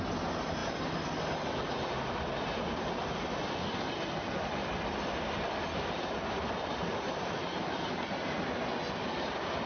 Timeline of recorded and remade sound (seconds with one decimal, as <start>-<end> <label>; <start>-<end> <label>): 0.0-9.7 recorded